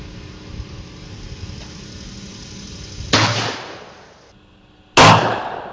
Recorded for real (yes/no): yes